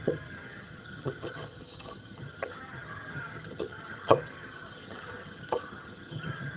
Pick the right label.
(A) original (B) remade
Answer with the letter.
B